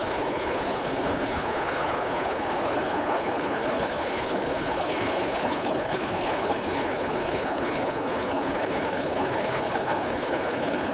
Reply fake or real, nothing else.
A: fake